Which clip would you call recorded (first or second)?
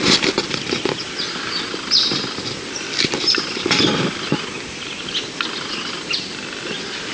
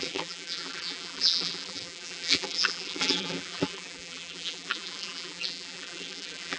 first